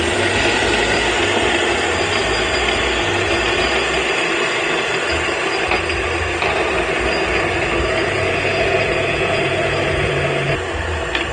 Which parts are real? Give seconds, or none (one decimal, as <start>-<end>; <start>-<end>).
0.0-8.0; 10.1-11.3